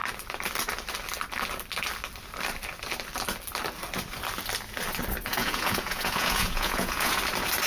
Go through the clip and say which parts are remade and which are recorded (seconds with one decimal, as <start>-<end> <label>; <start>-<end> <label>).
0.0-5.3 recorded; 5.3-7.2 remade; 7.2-7.7 recorded